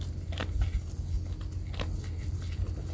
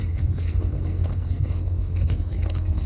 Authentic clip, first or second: first